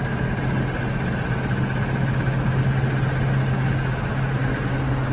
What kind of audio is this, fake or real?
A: real